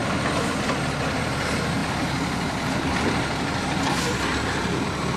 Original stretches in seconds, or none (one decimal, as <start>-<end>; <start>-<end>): 0.7-1.8; 4.8-5.2